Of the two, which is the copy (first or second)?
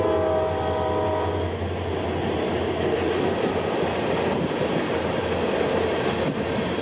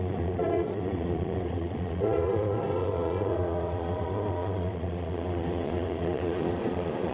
second